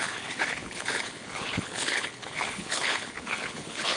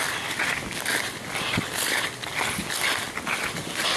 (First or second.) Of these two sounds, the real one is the second